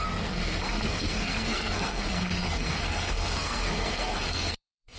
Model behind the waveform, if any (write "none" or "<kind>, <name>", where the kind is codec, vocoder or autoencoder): codec, SNAC